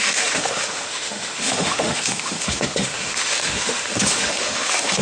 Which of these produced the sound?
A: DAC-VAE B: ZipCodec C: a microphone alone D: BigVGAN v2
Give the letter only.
A